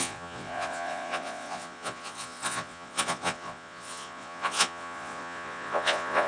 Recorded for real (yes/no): no